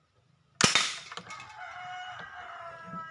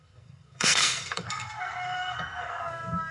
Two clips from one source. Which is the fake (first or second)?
second